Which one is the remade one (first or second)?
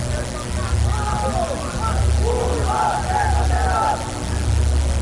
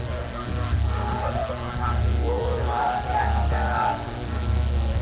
second